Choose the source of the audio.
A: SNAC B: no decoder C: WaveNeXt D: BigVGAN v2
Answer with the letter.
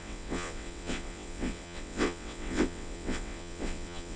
C